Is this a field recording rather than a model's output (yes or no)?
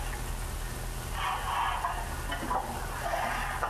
yes